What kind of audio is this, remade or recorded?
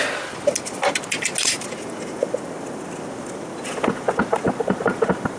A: recorded